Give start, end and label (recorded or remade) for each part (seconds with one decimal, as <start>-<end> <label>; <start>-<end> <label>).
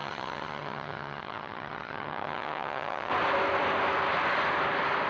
0.0-3.1 remade; 3.1-5.1 recorded